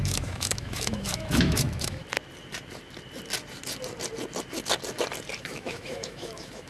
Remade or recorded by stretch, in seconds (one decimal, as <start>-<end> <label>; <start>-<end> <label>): 0.0-2.0 remade; 2.0-5.4 recorded; 5.4-6.7 remade